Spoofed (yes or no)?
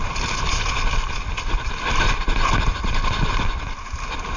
no